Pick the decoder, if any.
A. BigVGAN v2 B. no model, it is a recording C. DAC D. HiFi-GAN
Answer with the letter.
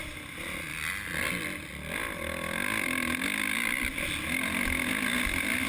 B